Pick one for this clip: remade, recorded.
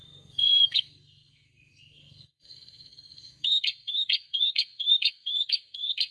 remade